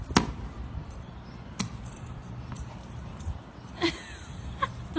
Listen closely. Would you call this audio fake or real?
real